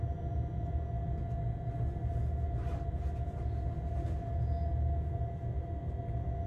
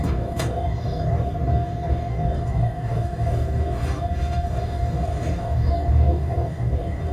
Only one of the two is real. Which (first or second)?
first